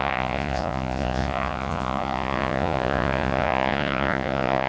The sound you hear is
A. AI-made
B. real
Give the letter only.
A